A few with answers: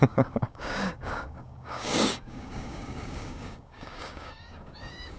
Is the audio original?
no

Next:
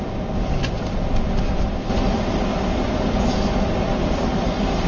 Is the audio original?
yes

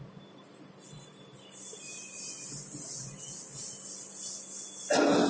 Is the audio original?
yes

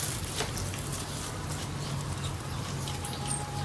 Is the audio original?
yes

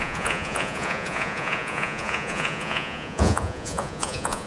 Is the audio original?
no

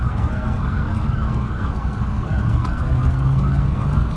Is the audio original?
no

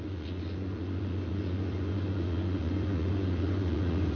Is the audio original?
no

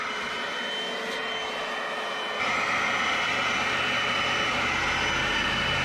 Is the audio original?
yes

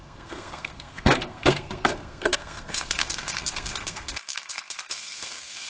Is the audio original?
no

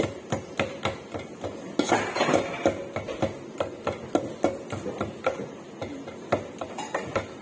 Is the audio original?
yes